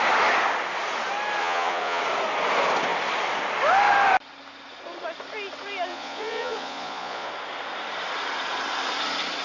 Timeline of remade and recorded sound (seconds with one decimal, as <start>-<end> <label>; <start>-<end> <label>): 0.0-1.4 recorded; 1.4-2.0 remade; 2.0-5.9 recorded; 5.9-7.3 remade; 7.3-9.4 recorded